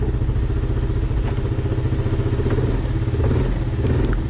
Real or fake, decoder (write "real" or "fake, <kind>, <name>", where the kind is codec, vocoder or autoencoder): real